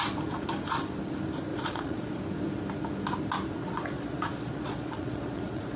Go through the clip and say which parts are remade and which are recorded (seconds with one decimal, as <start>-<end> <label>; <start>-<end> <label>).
0.0-1.5 recorded; 1.5-2.2 remade; 2.2-3.6 recorded; 3.6-5.8 remade